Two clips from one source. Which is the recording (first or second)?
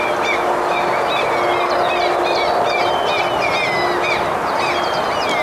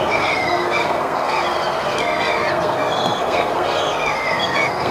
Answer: first